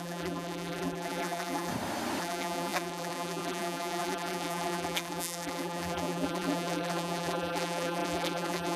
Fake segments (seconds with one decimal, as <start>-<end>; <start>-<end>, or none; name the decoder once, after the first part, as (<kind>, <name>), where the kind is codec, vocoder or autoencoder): 0.0-1.7 (vocoder, BigVGAN v2); 2.2-8.8